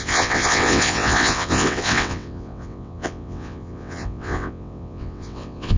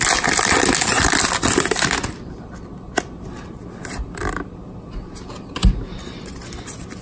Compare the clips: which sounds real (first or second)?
second